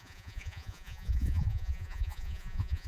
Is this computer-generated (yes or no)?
yes